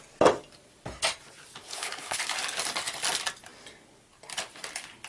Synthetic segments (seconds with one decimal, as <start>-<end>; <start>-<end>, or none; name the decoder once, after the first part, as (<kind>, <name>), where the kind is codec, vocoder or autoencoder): 1.6-2.2 (codec, HILCodec)